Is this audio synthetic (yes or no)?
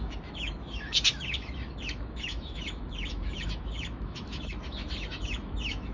yes